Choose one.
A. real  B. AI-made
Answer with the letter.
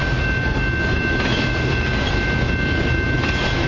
A